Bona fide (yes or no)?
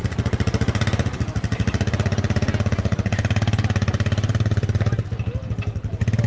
yes